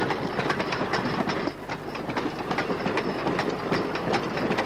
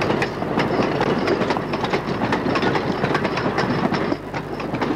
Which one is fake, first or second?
first